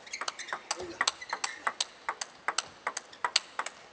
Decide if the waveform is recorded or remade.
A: recorded